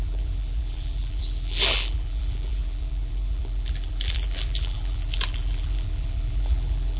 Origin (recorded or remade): remade